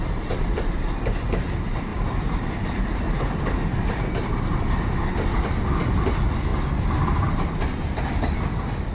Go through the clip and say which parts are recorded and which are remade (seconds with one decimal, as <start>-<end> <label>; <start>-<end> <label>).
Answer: 0.0-8.9 recorded